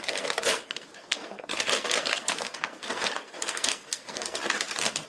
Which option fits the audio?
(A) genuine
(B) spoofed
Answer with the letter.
B